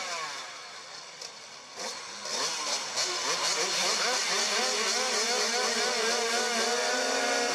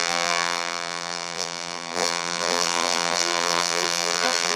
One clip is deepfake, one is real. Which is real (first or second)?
first